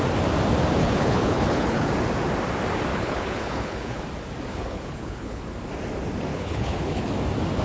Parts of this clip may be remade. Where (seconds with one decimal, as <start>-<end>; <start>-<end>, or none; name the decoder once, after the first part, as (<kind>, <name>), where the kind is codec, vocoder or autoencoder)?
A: 0.8-1.9 (codec, HILCodec); 2.9-4.0; 4.5-5.4; 6.3-7.1

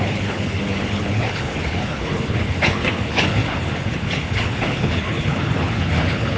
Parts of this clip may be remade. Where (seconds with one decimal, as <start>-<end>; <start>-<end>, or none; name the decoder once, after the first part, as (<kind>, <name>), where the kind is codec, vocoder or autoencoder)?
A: 0.0-6.4 (codec, HILCodec)

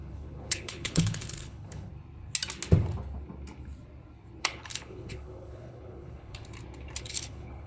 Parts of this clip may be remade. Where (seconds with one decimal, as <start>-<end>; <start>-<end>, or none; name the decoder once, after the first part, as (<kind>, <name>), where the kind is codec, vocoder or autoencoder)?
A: 0.0-1.9 (codec, HILCodec); 4.4-6.4; 7.0-7.7

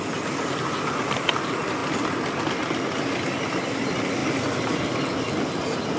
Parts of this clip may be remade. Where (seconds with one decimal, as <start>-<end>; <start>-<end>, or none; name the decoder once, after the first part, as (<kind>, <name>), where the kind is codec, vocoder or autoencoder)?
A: none